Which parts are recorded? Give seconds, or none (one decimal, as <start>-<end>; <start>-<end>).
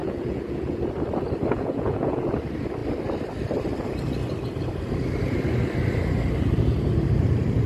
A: 0.8-1.5; 2.3-7.7